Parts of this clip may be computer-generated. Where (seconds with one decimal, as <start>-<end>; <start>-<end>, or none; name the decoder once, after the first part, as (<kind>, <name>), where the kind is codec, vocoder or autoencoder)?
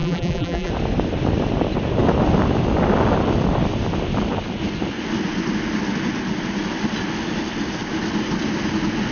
0.0-0.7 (vocoder, BigVGAN v2)